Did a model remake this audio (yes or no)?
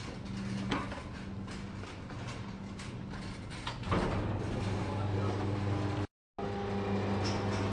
no